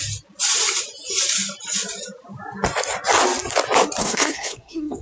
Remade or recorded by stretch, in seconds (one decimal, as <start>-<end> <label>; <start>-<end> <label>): 0.0-4.0 recorded; 4.0-5.0 remade

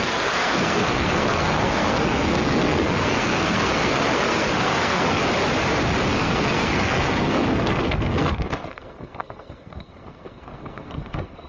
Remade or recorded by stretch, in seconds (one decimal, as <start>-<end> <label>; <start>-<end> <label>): 0.0-5.2 remade; 5.2-6.1 recorded; 6.1-11.5 remade

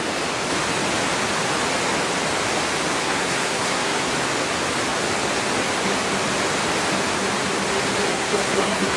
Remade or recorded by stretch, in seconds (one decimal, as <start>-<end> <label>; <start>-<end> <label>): 0.0-3.0 recorded; 3.0-4.1 remade; 4.1-8.1 recorded; 8.1-9.0 remade

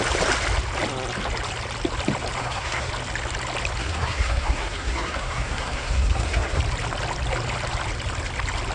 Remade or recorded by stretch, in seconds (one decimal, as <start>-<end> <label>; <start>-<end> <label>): 0.0-2.4 recorded; 2.4-2.9 remade; 2.9-3.8 recorded; 3.8-6.6 remade; 6.6-8.7 recorded

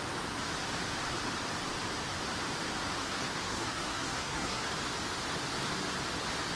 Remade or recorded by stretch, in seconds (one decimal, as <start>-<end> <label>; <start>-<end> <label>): 0.0-3.0 recorded; 3.0-4.6 remade; 4.6-6.6 recorded

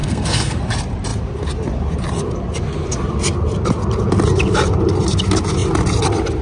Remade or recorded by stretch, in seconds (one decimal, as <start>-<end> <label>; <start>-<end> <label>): 0.0-0.6 remade; 0.6-6.4 recorded